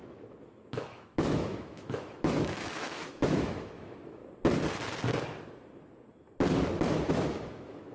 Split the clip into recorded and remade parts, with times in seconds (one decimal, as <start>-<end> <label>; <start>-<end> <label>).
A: 0.0-4.2 remade; 4.2-7.1 recorded; 7.1-7.9 remade